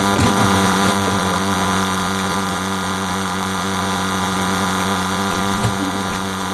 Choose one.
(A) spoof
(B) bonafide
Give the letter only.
A